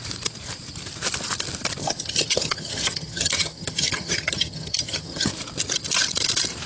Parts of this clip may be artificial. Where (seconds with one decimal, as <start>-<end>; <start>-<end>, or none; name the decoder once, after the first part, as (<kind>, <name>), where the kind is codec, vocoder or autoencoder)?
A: 1.8-5.3 (vocoder, HiFi-GAN)